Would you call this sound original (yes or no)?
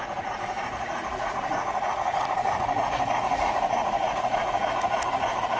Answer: no